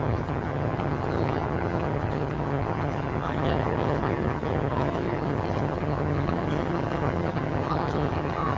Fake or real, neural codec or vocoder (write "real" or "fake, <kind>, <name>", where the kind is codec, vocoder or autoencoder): fake, vocoder, HiFi-GAN